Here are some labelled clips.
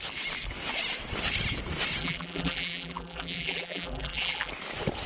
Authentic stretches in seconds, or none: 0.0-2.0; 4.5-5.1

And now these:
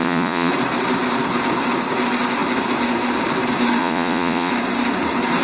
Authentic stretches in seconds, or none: 0.5-3.8; 4.5-5.4

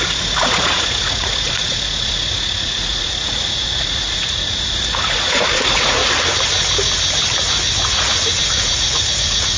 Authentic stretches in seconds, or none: 6.0-7.7

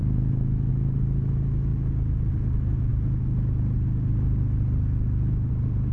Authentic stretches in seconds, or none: 0.7-5.9

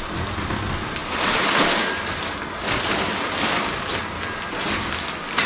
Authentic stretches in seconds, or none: 0.0-5.5